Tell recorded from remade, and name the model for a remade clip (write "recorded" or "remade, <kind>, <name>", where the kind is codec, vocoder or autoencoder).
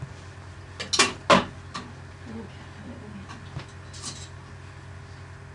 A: recorded